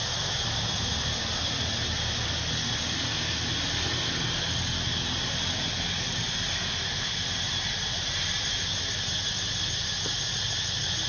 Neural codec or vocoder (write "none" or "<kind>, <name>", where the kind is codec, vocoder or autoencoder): none